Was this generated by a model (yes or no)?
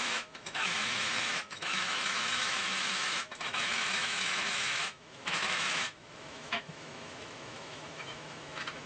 yes